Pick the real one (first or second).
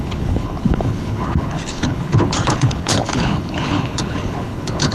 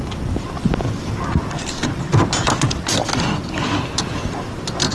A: second